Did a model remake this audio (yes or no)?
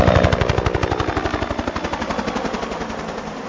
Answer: no